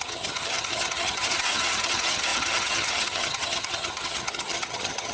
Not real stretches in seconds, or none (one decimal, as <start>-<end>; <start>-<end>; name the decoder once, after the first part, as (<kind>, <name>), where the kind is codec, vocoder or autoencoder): 0.0-5.1 (vocoder, HiFi-GAN)